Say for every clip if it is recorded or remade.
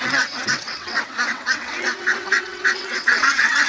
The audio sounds remade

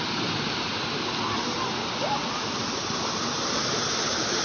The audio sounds recorded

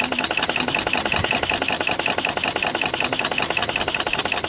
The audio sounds recorded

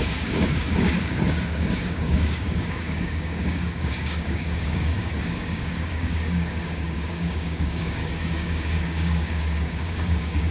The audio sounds remade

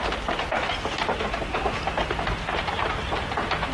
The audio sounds recorded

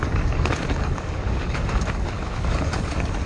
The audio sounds remade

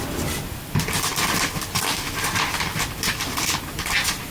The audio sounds recorded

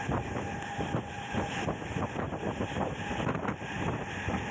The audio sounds recorded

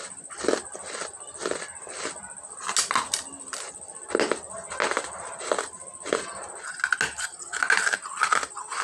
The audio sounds recorded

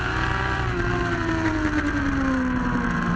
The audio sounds recorded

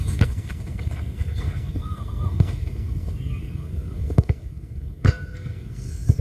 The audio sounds remade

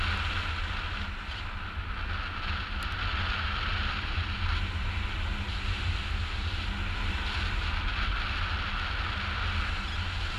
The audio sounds recorded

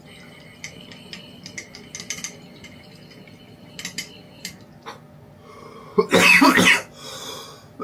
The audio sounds recorded